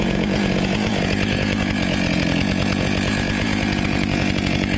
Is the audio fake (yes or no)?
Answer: yes